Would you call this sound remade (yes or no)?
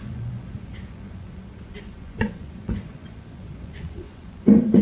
yes